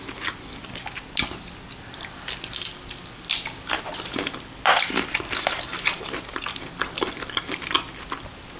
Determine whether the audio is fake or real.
real